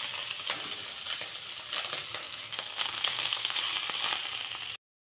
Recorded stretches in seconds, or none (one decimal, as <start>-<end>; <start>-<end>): 0.0-2.2; 3.6-5.0